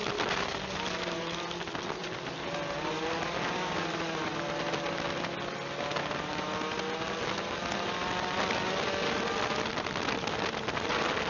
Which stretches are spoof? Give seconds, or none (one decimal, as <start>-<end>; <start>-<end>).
none